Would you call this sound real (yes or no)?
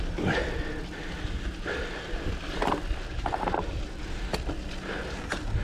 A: yes